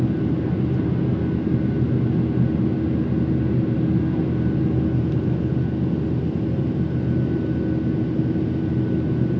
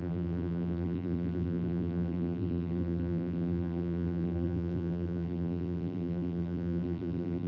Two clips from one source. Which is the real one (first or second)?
first